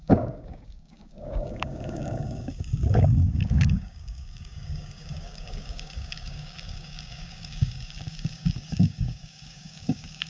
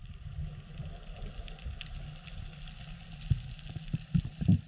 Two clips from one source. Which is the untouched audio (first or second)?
second